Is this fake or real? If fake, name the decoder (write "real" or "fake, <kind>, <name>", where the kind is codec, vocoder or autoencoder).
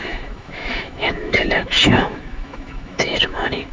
fake, autoencoder, DAC-VAE